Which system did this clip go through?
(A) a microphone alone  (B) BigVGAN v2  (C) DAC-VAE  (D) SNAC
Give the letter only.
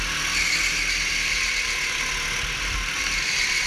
A